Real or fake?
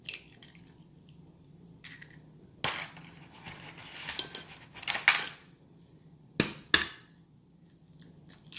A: real